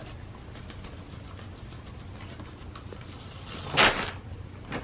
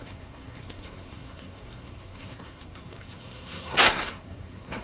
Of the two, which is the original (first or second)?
first